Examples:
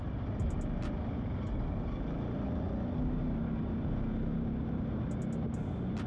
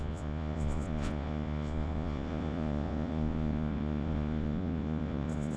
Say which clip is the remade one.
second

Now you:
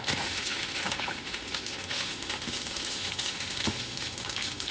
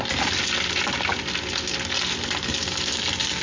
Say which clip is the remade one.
first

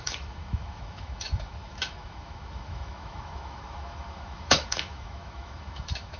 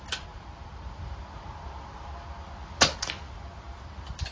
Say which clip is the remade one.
first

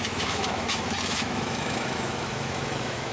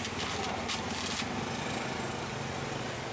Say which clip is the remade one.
first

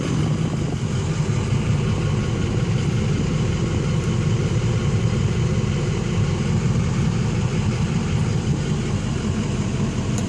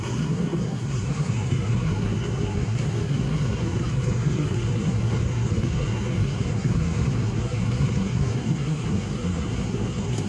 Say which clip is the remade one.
second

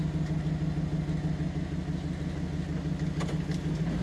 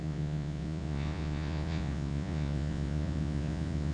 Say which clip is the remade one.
second